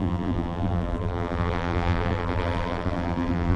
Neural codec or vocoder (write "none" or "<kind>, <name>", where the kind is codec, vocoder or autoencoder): vocoder, BigVGAN v2